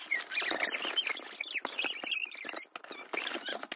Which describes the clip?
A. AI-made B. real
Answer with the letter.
B